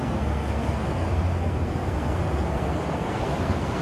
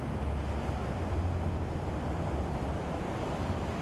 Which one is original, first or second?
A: second